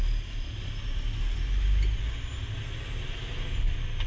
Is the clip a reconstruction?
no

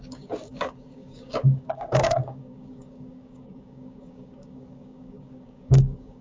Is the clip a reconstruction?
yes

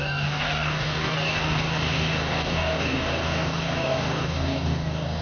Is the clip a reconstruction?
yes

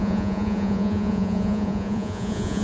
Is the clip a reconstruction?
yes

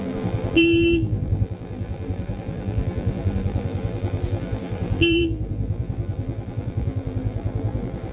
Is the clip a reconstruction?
yes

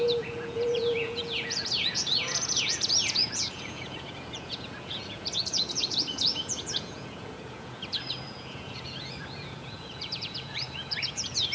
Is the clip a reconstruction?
yes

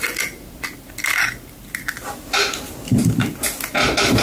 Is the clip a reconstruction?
no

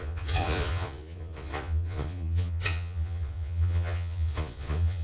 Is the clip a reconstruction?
yes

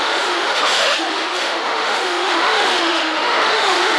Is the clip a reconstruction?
yes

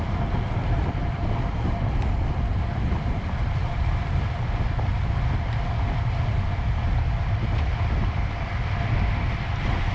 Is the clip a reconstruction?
yes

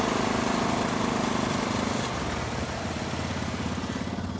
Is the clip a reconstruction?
no